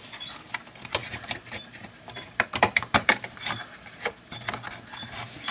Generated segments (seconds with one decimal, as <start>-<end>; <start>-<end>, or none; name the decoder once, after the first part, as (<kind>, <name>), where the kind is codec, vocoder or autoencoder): 1.0-3.4 (vocoder, BigVGAN v2)

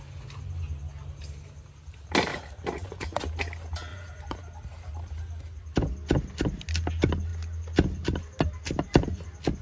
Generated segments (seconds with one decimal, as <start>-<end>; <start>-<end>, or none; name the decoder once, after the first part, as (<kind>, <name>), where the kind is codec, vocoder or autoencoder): 2.3-3.2 (vocoder, Vocos); 3.9-4.4

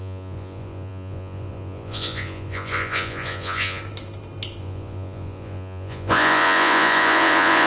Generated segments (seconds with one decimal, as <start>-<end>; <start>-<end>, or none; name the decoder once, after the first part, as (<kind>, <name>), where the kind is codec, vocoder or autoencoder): 0.0-3.8 (vocoder, Vocos); 4.6-7.7

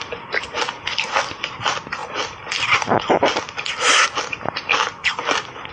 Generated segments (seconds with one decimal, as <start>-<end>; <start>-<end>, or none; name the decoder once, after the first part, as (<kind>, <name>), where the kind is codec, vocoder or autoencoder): none

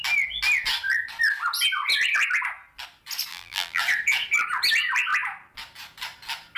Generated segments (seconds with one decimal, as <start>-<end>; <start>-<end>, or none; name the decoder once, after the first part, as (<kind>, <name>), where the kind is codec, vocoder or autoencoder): 3.3-3.8 (vocoder, BigVGAN v2)

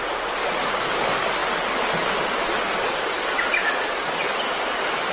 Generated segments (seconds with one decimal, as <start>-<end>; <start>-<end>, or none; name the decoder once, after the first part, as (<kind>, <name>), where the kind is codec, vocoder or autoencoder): none

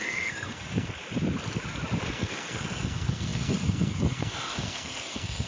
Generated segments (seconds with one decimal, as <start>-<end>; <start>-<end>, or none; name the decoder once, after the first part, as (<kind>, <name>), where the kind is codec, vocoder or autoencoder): 0.0-1.0 (codec, SNAC); 2.1-5.5

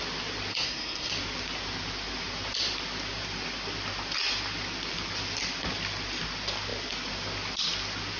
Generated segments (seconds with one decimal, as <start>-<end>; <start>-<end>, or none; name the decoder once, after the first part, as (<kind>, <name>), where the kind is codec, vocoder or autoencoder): 0.5-1.1 (codec, SNAC)